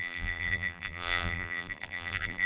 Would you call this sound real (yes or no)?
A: no